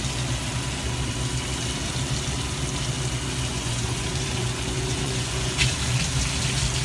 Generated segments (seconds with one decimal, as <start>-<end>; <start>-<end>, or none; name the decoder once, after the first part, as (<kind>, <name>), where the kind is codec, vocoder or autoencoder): 3.5-5.6 (vocoder, Vocos)